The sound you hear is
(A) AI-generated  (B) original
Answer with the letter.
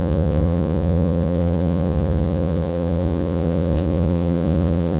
A